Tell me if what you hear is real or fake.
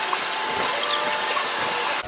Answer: real